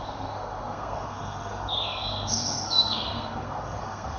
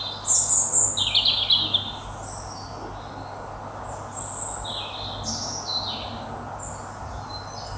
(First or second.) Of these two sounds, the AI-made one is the first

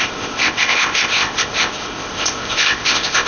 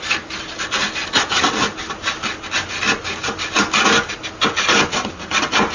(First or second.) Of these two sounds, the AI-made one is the first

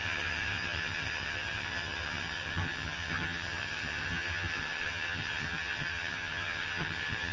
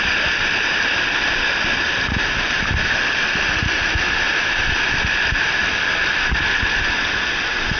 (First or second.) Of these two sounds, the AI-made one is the first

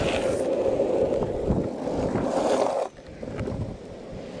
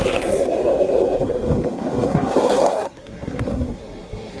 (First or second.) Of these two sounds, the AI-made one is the second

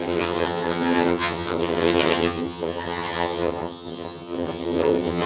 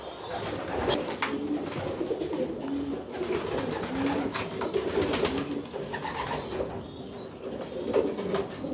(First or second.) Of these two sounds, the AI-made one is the first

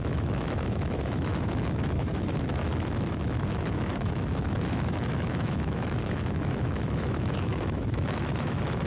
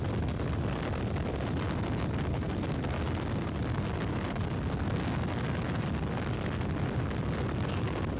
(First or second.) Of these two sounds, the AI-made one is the first